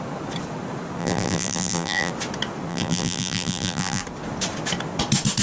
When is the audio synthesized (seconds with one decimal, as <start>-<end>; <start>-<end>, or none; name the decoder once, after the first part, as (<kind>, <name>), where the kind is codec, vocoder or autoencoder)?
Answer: 1.0-2.1 (vocoder, BigVGAN v2); 2.7-4.0